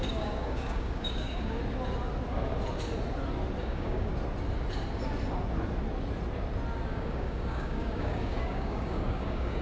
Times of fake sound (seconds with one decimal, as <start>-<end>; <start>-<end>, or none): 0.0-1.6; 3.6-4.1; 6.9-9.6